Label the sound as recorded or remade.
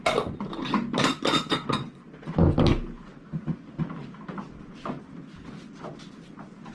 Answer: recorded